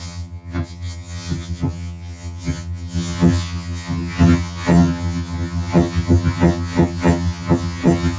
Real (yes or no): no